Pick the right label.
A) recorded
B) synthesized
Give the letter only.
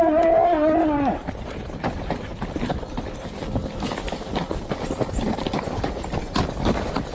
A